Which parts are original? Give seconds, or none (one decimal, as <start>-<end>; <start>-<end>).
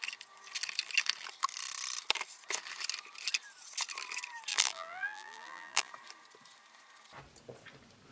0.0-4.5; 5.9-8.1